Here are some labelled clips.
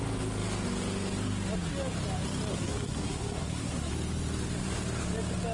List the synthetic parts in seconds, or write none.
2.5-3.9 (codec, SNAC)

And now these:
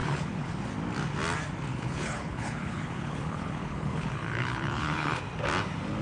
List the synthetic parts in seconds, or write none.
0.0-0.5 (codec, HILCodec); 1.7-5.2

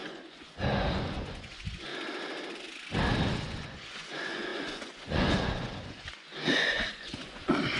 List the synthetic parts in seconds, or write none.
0.0-1.9 (vocoder, Vocos); 3.3-7.8